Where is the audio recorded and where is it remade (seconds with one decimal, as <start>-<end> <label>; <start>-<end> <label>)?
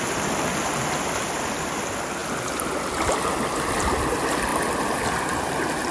0.0-5.9 recorded